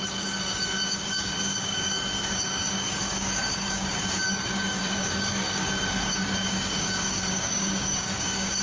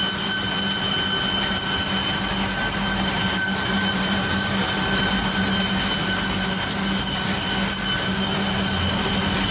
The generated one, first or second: first